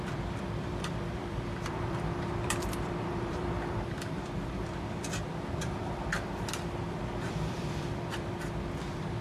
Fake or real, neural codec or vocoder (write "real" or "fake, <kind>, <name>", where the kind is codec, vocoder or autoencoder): fake, vocoder, BigVGAN v2